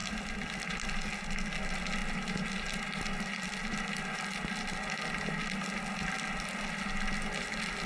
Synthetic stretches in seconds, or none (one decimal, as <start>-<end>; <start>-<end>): none